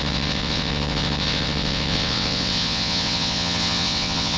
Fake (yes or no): yes